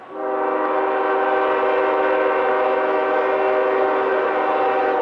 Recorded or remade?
recorded